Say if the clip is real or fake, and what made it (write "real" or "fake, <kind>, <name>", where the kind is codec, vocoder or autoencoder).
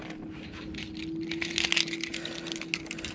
real